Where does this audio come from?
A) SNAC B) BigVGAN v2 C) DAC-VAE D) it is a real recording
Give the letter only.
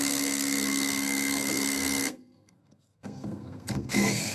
A